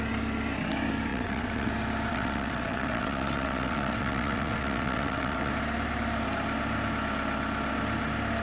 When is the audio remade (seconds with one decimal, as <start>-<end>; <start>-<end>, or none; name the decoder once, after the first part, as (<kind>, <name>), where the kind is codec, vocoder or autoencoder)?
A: 1.1-1.7 (vocoder, WaveNeXt); 2.1-5.5